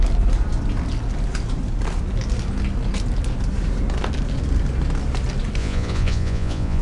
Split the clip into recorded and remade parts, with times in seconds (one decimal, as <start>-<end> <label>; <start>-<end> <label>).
0.0-5.6 recorded; 5.6-6.8 remade